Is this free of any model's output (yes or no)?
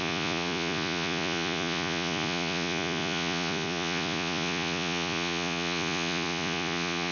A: no